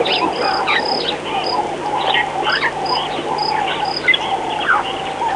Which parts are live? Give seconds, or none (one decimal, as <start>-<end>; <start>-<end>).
0.0-5.4